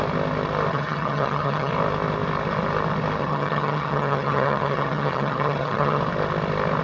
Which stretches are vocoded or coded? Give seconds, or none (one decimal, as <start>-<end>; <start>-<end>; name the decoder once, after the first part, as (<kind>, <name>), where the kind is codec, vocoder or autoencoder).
0.7-1.7 (vocoder, HiFi-GAN); 3.2-6.0